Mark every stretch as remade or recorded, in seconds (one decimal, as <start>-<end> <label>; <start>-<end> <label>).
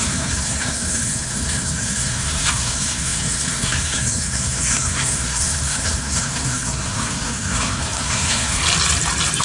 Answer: 0.0-8.6 remade; 8.6-9.4 recorded